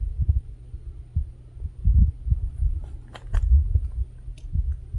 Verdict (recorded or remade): recorded